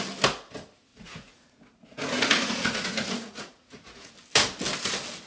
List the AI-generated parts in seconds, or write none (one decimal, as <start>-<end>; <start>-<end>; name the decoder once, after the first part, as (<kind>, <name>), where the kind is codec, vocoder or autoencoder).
0.9-4.1 (vocoder, Vocos)